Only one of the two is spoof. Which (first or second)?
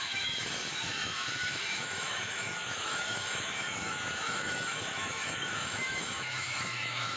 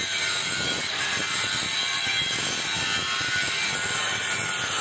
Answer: first